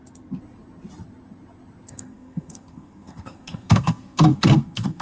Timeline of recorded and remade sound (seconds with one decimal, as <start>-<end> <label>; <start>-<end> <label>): 0.0-1.9 recorded; 1.9-5.0 remade